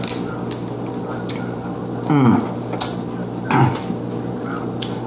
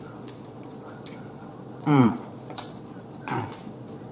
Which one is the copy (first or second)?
second